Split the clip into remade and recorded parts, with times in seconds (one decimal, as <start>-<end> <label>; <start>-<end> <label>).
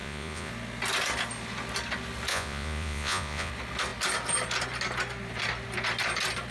0.0-0.5 remade; 0.5-2.3 recorded; 2.3-3.5 remade; 3.5-6.5 recorded